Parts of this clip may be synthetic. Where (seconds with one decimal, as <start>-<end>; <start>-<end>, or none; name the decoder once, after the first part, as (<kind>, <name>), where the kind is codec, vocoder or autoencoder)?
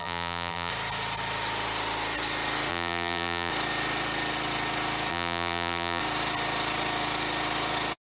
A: 0.0-0.7 (vocoder, BigVGAN v2); 2.7-3.5; 5.1-6.0